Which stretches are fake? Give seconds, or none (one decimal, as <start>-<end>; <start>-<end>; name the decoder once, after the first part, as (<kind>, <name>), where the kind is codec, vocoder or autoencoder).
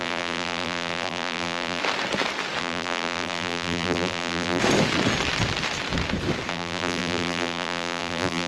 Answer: 0.0-1.8 (vocoder, BigVGAN v2); 2.6-4.6; 6.5-8.5